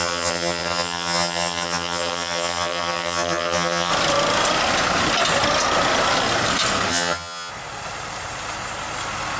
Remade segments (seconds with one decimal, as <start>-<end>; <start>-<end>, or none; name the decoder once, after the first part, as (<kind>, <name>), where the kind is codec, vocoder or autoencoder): 0.0-3.9 (vocoder, HiFi-GAN); 6.9-7.5